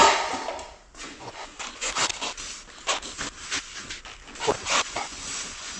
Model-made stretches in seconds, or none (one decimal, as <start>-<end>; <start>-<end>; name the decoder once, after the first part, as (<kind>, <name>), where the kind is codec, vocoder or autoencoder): 1.0-2.0 (vocoder, Vocos); 4.6-5.8